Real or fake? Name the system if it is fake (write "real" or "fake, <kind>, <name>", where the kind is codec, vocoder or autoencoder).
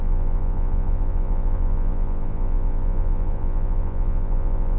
fake, vocoder, Vocos